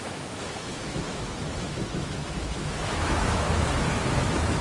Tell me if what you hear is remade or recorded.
remade